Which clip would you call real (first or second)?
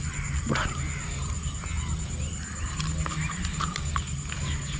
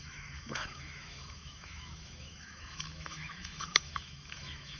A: first